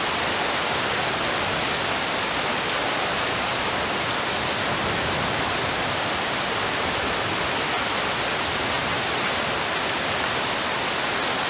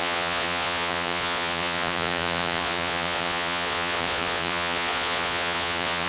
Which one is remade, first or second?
second